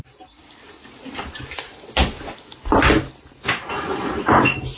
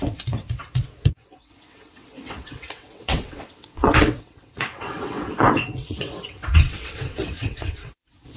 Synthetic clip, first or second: second